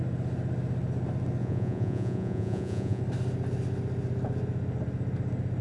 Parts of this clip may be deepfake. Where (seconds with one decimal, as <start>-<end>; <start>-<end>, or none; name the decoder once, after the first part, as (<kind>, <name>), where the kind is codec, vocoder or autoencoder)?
1.4-3.0 (vocoder, Vocos)